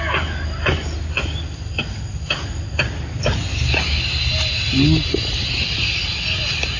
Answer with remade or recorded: recorded